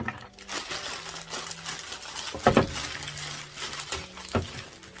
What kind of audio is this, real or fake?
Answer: real